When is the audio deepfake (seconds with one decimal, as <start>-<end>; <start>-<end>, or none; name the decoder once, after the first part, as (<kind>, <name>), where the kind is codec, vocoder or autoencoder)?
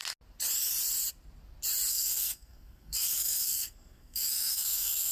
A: 1.9-5.1 (codec, SNAC)